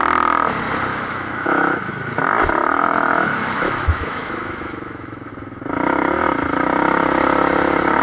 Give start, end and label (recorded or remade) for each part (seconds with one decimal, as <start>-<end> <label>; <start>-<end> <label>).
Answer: 0.0-0.9 recorded; 0.9-1.8 remade; 1.8-2.6 recorded; 2.6-5.3 remade; 5.3-8.0 recorded

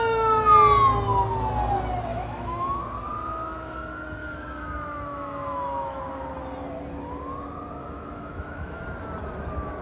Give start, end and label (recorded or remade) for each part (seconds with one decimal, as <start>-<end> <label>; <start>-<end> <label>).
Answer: 0.0-2.1 recorded; 2.1-2.8 remade; 2.8-4.2 recorded; 4.2-6.0 remade; 6.0-7.8 recorded; 7.8-8.8 remade; 8.8-9.8 recorded

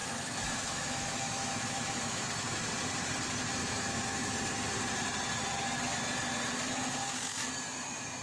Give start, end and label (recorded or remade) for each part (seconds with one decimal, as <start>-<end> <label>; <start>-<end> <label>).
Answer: 0.0-2.2 remade; 2.2-3.6 recorded; 3.6-4.3 remade; 4.3-7.0 recorded; 7.0-7.5 remade; 7.5-8.2 recorded

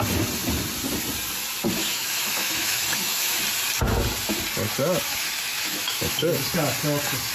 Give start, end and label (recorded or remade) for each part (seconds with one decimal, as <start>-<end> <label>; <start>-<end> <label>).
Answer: 0.0-1.8 recorded; 1.8-3.4 remade; 3.4-5.1 recorded; 5.1-6.4 remade; 6.4-7.3 recorded

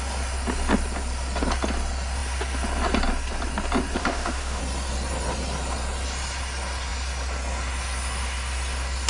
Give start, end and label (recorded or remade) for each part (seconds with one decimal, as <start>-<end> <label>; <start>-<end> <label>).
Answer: 0.0-4.0 recorded; 4.0-4.6 remade; 4.6-9.1 recorded

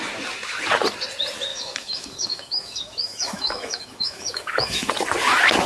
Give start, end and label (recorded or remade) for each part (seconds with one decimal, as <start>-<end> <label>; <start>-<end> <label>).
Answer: 0.0-1.5 recorded; 1.5-4.9 remade; 4.9-5.7 recorded